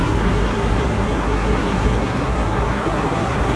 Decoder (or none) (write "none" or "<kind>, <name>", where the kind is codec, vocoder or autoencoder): codec, SNAC